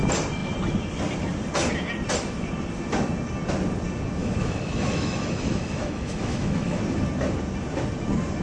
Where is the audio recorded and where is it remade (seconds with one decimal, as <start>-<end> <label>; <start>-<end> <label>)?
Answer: 0.0-4.2 recorded; 4.2-6.8 remade; 6.8-8.4 recorded